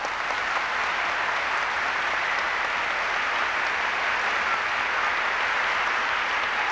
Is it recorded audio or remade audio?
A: recorded